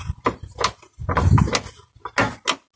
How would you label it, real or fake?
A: real